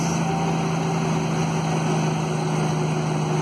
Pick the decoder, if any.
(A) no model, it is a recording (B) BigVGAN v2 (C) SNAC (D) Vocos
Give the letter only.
A